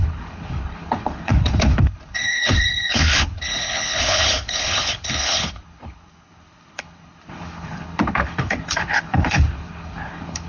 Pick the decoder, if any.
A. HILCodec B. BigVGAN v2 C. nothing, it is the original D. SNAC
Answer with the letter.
A